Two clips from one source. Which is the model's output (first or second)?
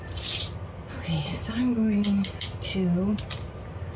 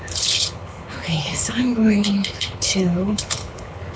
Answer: second